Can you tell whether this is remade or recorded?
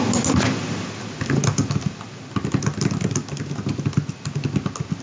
recorded